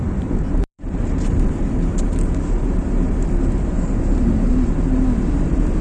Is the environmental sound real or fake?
fake